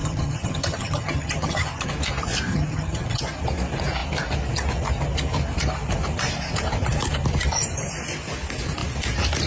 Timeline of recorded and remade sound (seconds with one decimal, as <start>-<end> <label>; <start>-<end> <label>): 0.0-1.9 remade; 1.9-2.5 recorded; 2.5-3.2 remade; 3.2-9.5 recorded